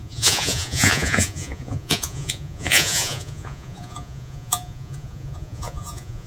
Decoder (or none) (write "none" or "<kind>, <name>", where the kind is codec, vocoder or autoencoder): vocoder, Vocos